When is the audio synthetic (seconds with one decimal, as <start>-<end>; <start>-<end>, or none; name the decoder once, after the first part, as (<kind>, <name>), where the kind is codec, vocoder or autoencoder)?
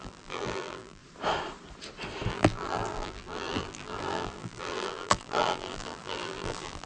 0.0-1.0 (vocoder, BigVGAN v2); 2.3-6.9